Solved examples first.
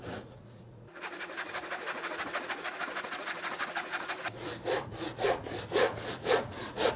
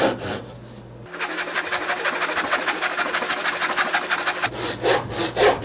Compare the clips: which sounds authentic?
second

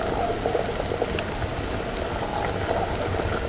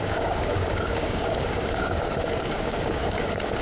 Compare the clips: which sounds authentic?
first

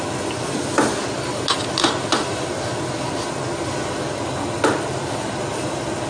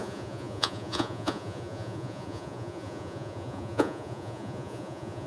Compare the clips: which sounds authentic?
first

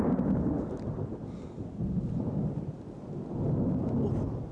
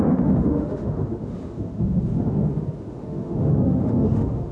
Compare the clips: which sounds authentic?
first